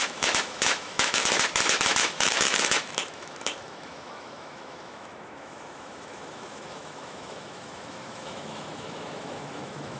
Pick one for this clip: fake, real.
fake